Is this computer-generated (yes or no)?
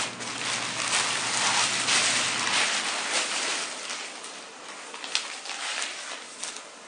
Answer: no